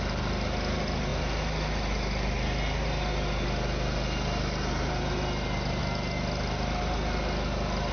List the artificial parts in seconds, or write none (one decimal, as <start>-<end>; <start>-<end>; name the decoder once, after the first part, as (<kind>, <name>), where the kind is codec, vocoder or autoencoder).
none